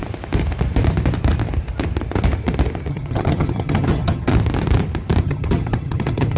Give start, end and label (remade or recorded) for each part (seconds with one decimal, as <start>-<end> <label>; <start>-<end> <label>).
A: 0.0-2.9 recorded; 2.9-4.3 remade; 4.3-5.2 recorded; 5.2-6.4 remade

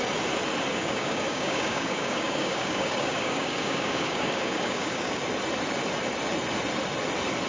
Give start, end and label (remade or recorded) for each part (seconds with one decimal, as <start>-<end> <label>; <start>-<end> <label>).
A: 0.0-0.7 recorded; 0.7-5.2 remade; 5.2-7.5 recorded

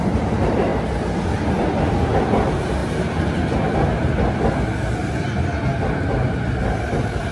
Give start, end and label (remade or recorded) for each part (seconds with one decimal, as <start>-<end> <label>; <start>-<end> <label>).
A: 0.0-0.7 remade; 0.7-1.2 recorded; 1.2-2.8 remade; 2.8-6.6 recorded; 6.6-7.3 remade

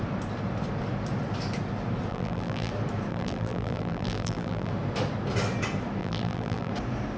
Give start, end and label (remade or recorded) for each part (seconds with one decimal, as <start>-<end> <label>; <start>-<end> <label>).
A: 0.0-2.1 recorded; 2.1-2.7 remade; 2.7-3.1 recorded; 3.1-4.7 remade; 4.7-6.0 recorded; 6.0-6.7 remade; 6.7-7.2 recorded